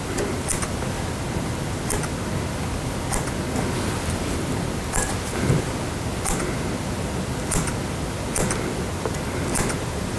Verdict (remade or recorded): recorded